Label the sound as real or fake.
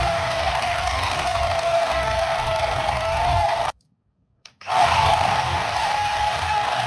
fake